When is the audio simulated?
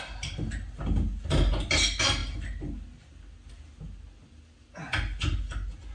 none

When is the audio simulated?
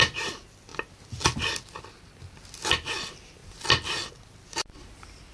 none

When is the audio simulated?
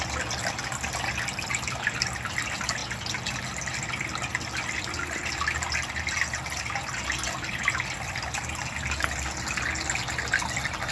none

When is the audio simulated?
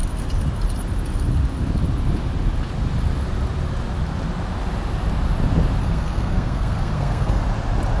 5.8-7.4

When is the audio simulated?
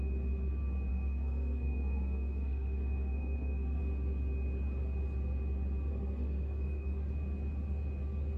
0.9-3.8; 5.9-7.1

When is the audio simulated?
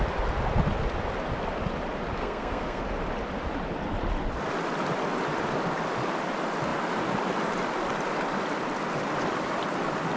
2.2-2.8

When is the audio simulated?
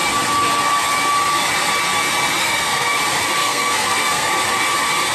2.4-3.0; 3.4-4.3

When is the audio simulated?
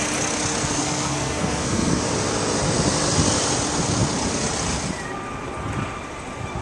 0.6-2.0